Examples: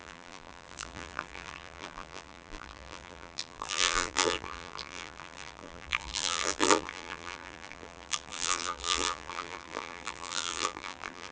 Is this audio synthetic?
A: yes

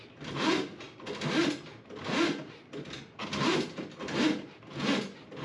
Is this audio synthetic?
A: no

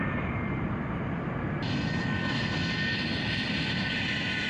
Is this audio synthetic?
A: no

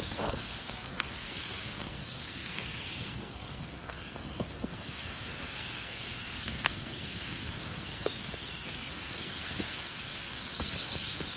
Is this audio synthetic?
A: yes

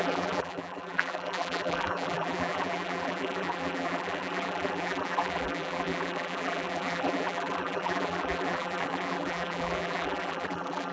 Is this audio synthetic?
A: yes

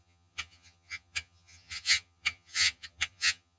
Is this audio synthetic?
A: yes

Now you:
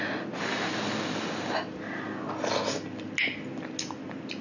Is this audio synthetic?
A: no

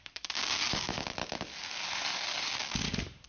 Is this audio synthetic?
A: yes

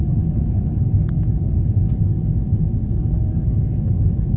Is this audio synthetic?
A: no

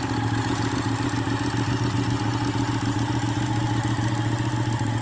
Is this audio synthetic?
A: no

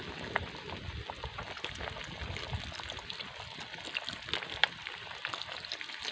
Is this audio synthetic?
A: no